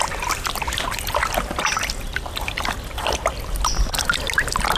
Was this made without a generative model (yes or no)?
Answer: yes